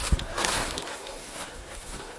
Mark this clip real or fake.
fake